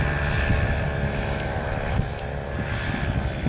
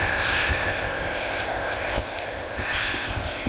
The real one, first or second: first